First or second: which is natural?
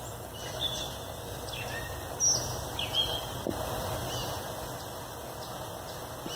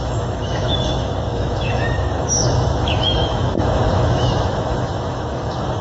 first